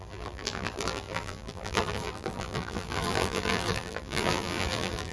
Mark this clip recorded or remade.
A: remade